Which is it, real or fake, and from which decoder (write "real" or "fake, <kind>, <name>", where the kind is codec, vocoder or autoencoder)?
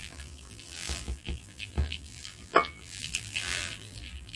fake, vocoder, BigVGAN v2